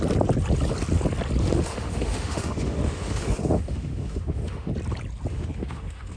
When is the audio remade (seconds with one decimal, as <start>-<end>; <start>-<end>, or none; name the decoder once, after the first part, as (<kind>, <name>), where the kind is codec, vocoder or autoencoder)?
1.4-4.7 (autoencoder, DAC-VAE); 5.3-6.2

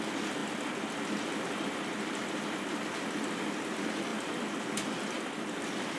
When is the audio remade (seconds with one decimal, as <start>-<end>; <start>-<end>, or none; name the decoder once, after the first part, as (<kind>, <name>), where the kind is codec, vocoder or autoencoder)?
none